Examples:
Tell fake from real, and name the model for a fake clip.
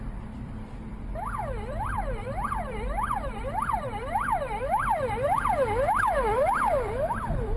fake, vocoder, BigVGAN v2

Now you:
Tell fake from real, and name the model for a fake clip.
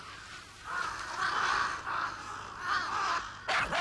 real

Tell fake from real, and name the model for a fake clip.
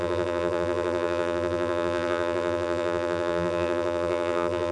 fake, vocoder, BigVGAN v2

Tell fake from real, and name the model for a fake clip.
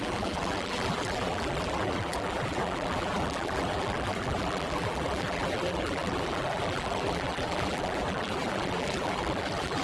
fake, vocoder, BigVGAN v2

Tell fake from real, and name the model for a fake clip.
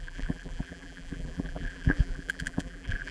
fake, vocoder, BigVGAN v2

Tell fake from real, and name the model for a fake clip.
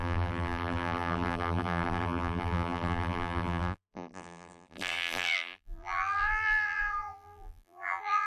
fake, vocoder, BigVGAN v2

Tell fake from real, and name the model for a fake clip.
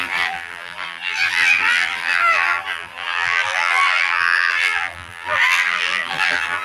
fake, vocoder, BigVGAN v2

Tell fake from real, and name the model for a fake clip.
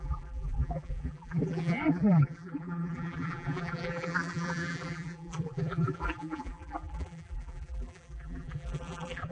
fake, vocoder, BigVGAN v2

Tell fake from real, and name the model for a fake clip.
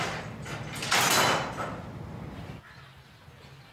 real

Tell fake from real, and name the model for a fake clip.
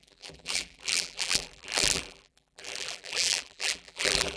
fake, vocoder, BigVGAN v2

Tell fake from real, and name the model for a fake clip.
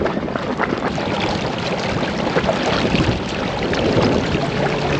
fake, vocoder, BigVGAN v2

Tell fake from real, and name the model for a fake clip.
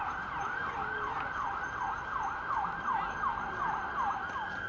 fake, vocoder, BigVGAN v2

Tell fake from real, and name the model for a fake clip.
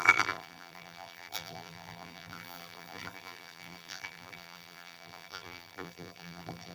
fake, vocoder, BigVGAN v2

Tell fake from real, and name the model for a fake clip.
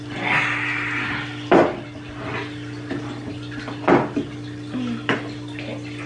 real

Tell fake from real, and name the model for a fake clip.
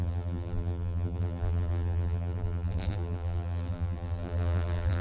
fake, vocoder, BigVGAN v2